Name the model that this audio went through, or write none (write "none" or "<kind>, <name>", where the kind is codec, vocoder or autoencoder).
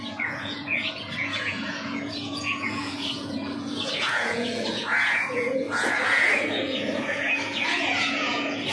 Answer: vocoder, Vocos